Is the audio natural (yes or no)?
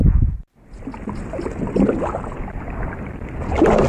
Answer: yes